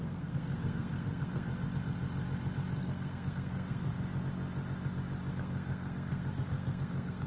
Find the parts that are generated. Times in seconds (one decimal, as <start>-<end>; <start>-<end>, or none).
0.0-1.5; 2.8-3.9; 5.3-7.3